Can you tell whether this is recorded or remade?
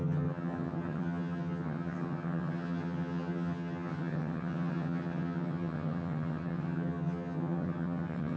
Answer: remade